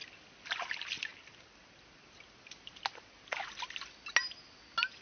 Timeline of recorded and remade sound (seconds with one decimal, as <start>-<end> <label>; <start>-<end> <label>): 0.0-5.0 recorded